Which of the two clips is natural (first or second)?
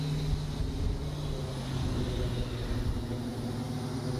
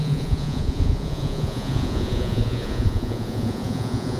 first